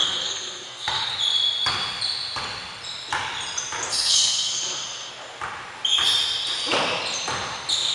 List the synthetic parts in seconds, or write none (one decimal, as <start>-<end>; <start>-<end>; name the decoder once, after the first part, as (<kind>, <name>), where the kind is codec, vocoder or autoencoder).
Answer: 0.0-1.1 (codec, SNAC); 3.9-5.1